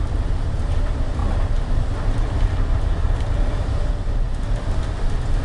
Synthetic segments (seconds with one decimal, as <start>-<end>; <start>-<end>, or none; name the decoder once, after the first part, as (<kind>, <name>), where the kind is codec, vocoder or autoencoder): 1.2-4.4 (vocoder, BigVGAN v2)